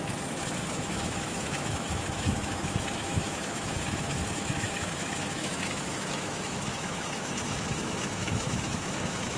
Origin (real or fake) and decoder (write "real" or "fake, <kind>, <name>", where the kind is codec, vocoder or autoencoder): fake, autoencoder, DAC-VAE